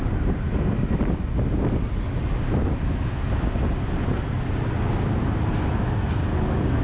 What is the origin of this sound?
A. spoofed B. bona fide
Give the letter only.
B